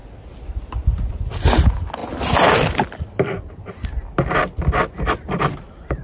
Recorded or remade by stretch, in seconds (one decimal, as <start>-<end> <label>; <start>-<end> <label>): 0.0-6.0 recorded